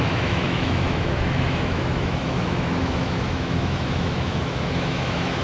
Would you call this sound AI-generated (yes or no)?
yes